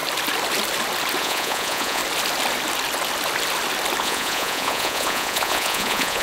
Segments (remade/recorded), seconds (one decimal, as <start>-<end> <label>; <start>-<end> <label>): 0.0-1.2 recorded; 1.2-2.0 remade; 2.0-4.0 recorded; 4.0-6.2 remade